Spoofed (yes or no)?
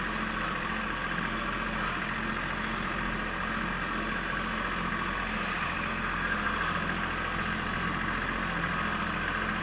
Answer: no